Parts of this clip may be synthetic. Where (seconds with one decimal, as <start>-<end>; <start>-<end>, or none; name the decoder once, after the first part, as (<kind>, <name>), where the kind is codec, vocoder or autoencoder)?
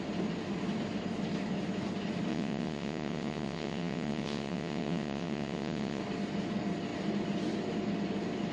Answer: 2.3-6.0 (vocoder, WaveNeXt)